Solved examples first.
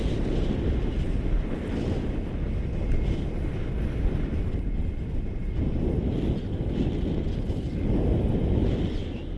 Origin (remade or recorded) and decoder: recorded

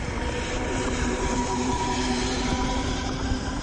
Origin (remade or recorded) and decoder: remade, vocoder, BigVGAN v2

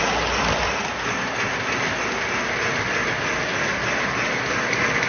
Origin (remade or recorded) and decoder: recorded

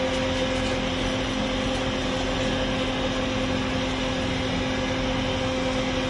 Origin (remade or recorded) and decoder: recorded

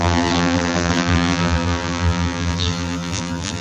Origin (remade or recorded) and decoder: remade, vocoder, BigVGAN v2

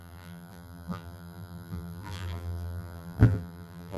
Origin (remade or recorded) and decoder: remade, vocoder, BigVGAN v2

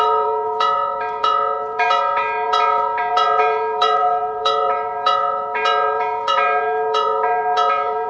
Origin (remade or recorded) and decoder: remade, vocoder, Vocos